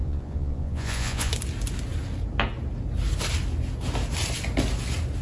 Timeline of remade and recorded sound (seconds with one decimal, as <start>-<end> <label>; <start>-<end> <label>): 0.0-1.3 remade; 1.3-5.2 recorded